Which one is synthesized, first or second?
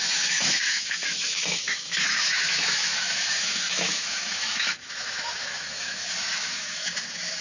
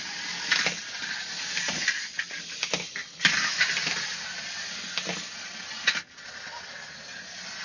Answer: first